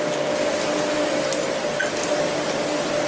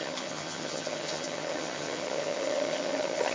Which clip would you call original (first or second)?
first